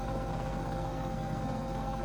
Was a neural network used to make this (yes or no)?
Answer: yes